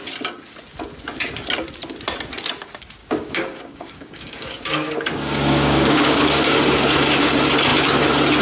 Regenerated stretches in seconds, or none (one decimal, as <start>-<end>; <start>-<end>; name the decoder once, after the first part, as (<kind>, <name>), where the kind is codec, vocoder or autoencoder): 3.0-7.3 (codec, DAC)